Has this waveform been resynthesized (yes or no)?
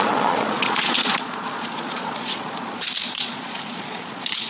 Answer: yes